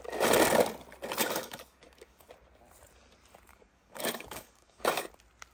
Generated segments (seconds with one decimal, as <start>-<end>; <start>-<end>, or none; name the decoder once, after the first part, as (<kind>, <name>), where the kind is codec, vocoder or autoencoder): 1.2-2.3 (codec, DAC); 3.5-5.1